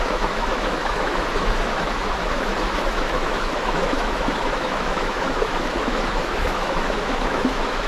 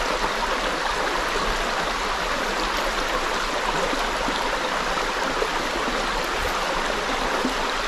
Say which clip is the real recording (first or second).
second